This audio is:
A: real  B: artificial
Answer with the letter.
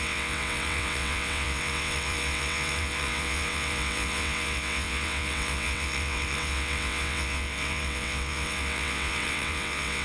B